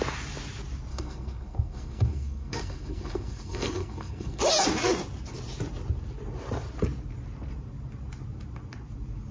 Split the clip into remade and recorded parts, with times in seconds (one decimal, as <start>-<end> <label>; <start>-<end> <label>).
0.0-0.9 recorded; 0.9-4.4 remade; 4.4-9.3 recorded